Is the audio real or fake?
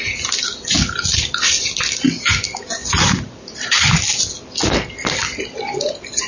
real